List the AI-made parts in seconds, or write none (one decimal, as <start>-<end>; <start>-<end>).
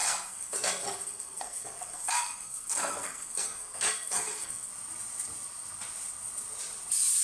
0.0-4.7